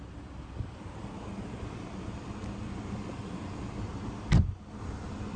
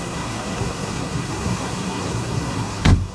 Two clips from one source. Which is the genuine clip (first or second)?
first